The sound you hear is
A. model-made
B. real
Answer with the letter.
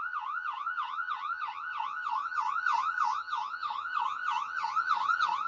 A